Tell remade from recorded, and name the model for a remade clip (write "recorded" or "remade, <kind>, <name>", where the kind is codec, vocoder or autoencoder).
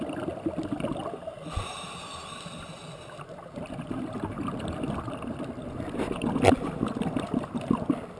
remade, vocoder, BigVGAN v2